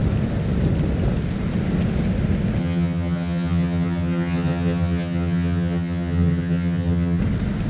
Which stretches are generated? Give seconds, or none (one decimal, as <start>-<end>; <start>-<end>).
2.6-7.2